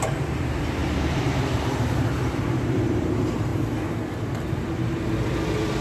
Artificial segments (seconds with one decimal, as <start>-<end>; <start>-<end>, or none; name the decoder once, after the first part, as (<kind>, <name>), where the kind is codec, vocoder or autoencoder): 0.0-3.5 (vocoder, BigVGAN v2)

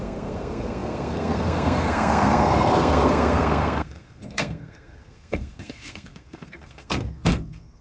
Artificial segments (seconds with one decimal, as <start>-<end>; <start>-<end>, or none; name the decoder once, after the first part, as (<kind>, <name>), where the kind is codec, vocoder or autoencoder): 0.0-7.8 (codec, SNAC)

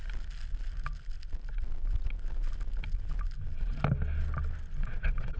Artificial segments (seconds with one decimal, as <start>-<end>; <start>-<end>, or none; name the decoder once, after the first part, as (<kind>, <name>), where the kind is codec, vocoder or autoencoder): 4.8-5.4 (vocoder, Vocos)

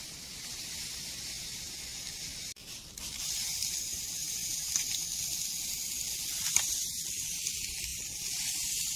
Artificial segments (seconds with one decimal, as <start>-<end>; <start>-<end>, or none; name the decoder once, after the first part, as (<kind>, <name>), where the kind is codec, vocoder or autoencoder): none

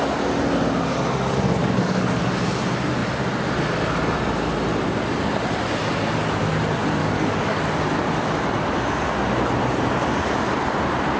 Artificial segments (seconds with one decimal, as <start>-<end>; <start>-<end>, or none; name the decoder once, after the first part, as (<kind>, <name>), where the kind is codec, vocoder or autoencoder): 1.6-2.2 (codec, DAC); 7.0-7.6

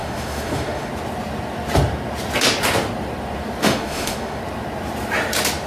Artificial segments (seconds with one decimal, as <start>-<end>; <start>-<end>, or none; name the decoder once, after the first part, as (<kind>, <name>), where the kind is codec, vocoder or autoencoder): 0.0-0.9 (autoencoder, DAC-VAE); 3.6-4.4

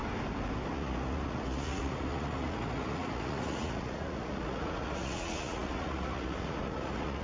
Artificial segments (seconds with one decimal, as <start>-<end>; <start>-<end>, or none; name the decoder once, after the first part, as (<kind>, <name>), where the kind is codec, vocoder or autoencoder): 0.7-7.2 (vocoder, Vocos)

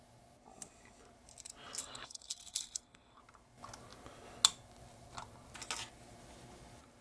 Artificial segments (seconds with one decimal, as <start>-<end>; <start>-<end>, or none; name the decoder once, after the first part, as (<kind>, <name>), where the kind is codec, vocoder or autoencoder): 1.8-3.2 (codec, SNAC)